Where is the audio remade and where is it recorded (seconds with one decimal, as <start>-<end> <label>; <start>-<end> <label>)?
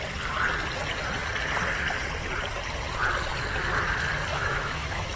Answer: 0.0-4.3 recorded; 4.3-5.2 remade